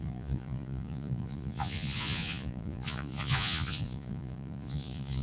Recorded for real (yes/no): no